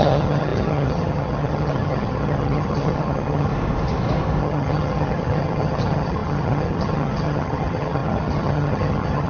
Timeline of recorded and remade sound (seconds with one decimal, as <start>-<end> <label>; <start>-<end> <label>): 0.0-3.5 remade; 3.5-4.4 recorded; 4.4-9.3 remade